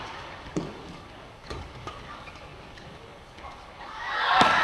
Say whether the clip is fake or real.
fake